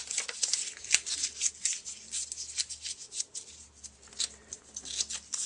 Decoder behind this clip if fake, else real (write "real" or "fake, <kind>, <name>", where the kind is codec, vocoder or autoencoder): real